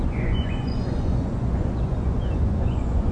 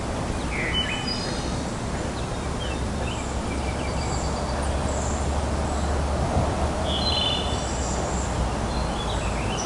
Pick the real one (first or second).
second